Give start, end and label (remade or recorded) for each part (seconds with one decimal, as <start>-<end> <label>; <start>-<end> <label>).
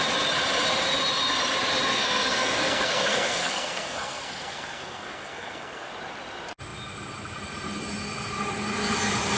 0.0-1.9 recorded; 1.9-5.9 remade; 5.9-9.4 recorded